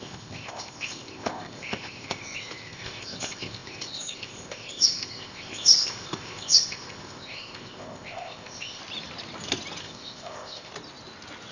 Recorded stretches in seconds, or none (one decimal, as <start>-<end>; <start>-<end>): 8.8-9.8; 10.7-11.5